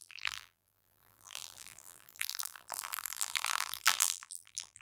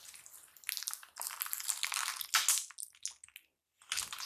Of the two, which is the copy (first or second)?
first